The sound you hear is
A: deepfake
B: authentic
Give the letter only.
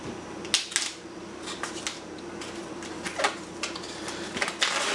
B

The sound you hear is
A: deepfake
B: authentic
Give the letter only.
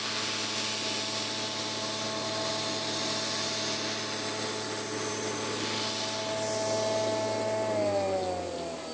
B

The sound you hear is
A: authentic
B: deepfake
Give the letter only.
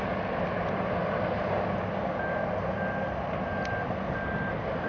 A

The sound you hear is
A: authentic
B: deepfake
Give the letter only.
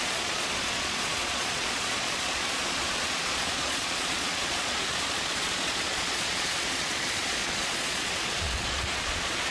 B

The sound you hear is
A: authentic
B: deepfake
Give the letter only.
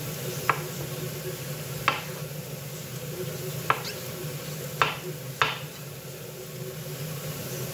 A